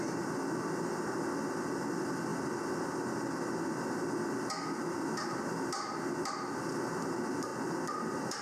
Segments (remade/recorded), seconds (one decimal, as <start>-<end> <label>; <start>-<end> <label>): 0.0-8.4 recorded